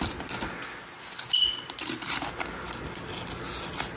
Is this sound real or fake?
real